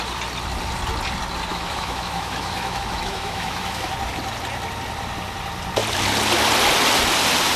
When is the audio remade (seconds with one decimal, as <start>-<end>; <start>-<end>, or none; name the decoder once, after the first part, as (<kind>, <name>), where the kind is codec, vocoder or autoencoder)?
1.5-3.9 (autoencoder, DAC-VAE)

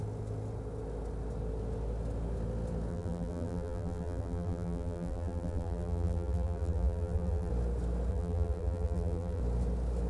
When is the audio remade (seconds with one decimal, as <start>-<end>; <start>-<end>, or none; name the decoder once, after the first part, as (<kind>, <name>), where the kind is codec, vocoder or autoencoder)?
2.9-7.5 (vocoder, BigVGAN v2); 8.1-9.4